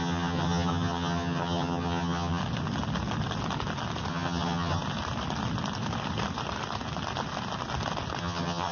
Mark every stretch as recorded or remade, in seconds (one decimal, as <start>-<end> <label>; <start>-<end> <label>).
0.0-2.4 remade; 2.4-4.1 recorded; 4.1-4.8 remade; 4.8-8.2 recorded; 8.2-8.7 remade